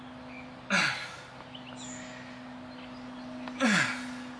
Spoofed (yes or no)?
no